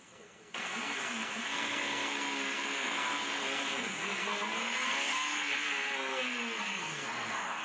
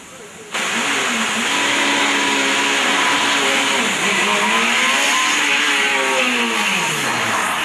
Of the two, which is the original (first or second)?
second